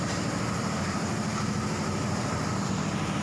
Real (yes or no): yes